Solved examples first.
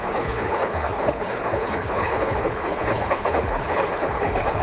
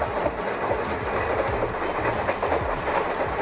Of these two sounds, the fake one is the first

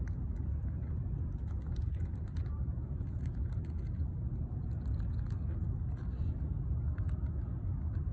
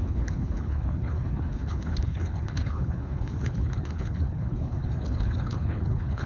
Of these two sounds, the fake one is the second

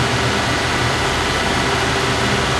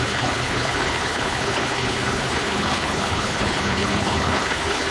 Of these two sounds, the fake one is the second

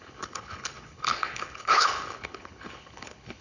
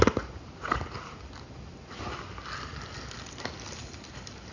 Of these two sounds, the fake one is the first